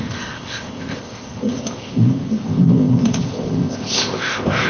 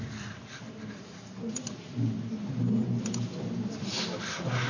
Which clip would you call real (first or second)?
second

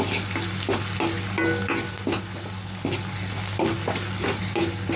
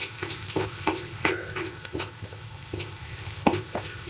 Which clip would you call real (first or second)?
first